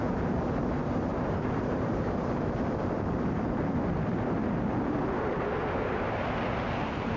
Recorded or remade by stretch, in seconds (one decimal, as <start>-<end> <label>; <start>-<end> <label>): 0.0-1.1 recorded; 1.1-2.3 remade; 2.3-7.2 recorded